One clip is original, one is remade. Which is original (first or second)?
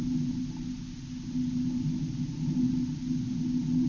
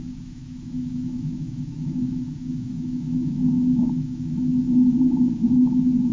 first